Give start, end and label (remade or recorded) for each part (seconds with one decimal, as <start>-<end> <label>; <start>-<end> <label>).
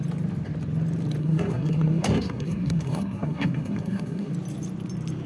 0.0-1.2 recorded; 1.2-4.3 remade; 4.3-5.3 recorded